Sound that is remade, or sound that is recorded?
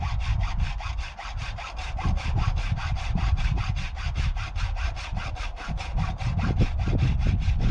recorded